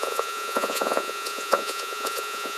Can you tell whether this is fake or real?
fake